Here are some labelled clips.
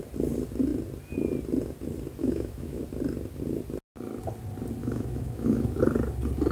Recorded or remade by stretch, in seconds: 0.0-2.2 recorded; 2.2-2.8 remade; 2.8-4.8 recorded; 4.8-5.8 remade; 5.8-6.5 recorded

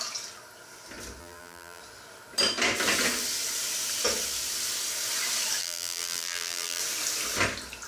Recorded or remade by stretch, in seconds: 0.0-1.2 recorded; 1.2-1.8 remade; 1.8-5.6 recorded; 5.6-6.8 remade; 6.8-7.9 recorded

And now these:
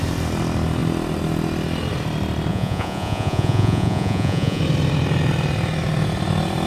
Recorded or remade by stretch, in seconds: 0.0-2.5 recorded; 2.5-4.6 remade; 4.6-6.7 recorded

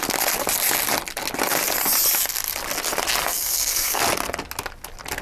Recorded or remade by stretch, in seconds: 0.0-3.2 recorded; 3.2-4.0 remade; 4.0-5.2 recorded